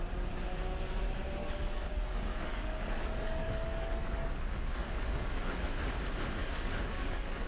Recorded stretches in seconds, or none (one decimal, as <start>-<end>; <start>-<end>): 0.0-1.4; 5.9-6.4